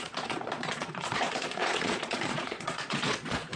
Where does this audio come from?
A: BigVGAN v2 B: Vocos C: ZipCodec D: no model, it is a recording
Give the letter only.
B